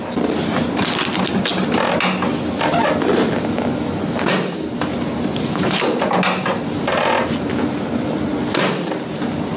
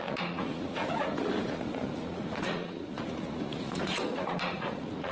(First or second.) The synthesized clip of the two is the second